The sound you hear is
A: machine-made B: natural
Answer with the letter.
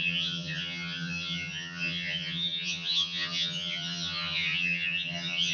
A